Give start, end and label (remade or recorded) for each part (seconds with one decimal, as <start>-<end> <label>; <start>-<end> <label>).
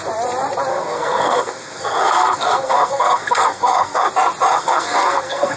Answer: 0.0-0.7 recorded; 0.7-4.1 remade; 4.1-4.5 recorded; 4.5-5.6 remade